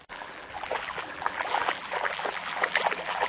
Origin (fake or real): fake